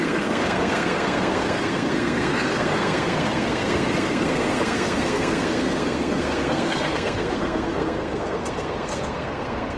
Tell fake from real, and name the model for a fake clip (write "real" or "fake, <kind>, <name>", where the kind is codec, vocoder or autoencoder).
fake, codec, SNAC